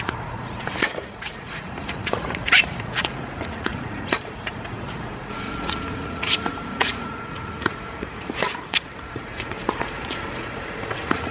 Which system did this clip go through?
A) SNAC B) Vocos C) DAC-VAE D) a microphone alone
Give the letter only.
B